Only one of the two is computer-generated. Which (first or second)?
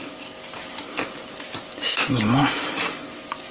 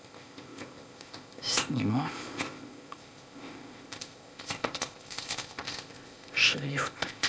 second